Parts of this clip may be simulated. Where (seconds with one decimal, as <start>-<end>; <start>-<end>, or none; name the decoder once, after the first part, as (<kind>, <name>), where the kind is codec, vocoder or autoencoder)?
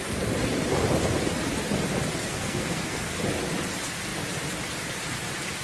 2.2-3.2 (codec, SNAC)